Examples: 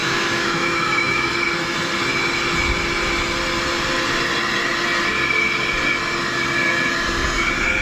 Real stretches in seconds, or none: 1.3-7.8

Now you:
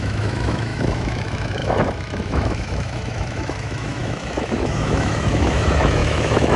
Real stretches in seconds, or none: none

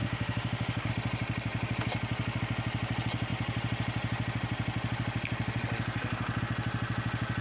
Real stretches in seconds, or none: 0.9-7.4